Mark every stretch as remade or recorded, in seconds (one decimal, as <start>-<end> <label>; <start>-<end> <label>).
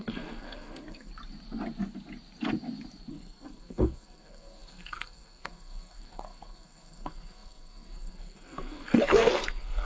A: 0.0-1.1 remade; 1.1-3.1 recorded; 3.1-9.8 remade